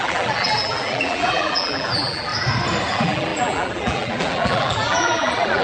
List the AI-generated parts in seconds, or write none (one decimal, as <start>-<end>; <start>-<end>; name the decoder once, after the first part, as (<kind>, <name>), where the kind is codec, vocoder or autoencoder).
0.0-2.3 (vocoder, BigVGAN v2); 2.9-5.6